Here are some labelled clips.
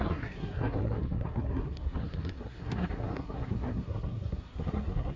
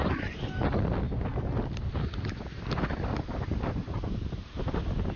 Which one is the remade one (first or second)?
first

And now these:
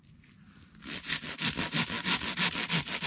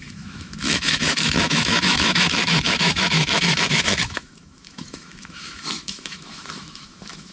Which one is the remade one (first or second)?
second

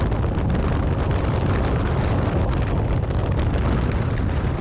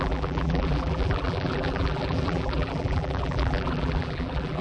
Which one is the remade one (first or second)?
second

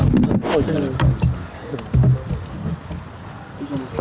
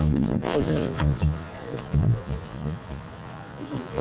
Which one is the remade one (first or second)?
second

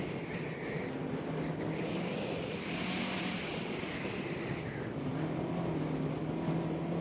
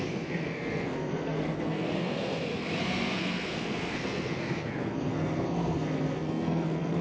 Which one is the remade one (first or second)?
second